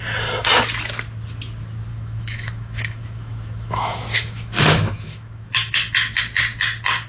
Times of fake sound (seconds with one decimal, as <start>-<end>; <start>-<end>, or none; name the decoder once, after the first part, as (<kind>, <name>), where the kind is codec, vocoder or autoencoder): 1.9-6.2 (autoencoder, DAC-VAE)